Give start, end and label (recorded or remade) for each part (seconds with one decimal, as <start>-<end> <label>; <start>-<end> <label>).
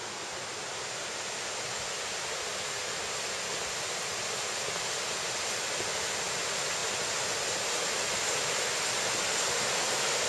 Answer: 0.0-10.3 recorded